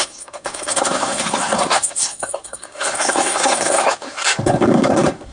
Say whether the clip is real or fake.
fake